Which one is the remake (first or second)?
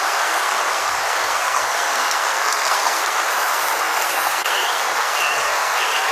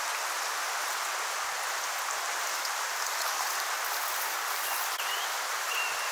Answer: first